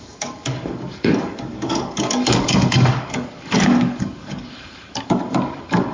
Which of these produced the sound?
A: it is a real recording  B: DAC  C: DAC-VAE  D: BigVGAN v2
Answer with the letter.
B